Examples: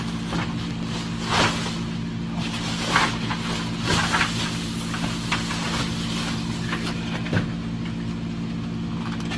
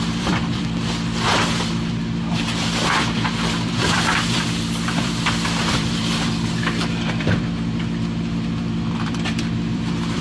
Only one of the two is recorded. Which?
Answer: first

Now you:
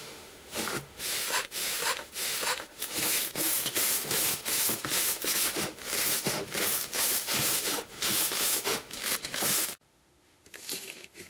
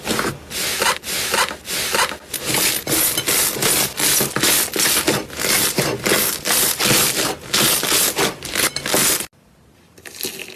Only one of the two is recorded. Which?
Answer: second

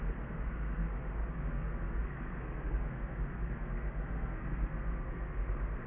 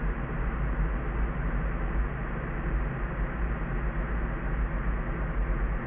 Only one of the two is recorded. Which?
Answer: second